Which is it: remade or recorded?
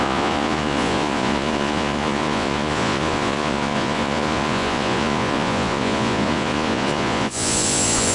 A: remade